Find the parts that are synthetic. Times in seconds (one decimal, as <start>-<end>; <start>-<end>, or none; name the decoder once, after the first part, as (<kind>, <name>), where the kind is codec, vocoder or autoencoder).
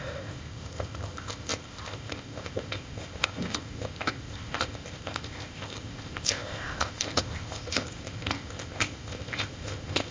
0.0-10.1 (codec, ZipCodec)